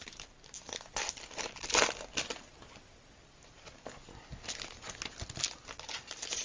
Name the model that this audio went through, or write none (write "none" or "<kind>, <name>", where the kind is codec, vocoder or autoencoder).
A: none